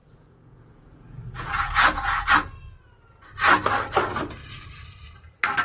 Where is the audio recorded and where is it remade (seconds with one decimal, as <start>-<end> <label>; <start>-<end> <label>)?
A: 0.0-2.3 remade; 2.3-5.6 recorded